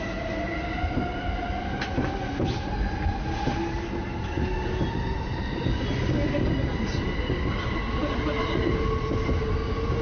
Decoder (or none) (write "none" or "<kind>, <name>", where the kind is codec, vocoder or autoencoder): none